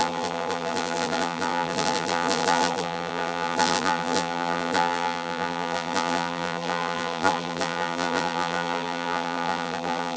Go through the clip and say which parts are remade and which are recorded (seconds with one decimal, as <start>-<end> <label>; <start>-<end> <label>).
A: 0.0-10.2 remade